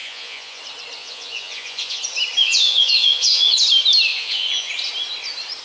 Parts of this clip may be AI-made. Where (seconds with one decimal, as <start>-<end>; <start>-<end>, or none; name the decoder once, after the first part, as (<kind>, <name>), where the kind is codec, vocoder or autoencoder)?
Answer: 0.0-0.6 (vocoder, Vocos); 1.0-2.0; 2.4-3.6; 4.1-4.7